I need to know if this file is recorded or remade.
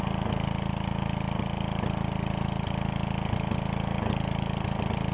recorded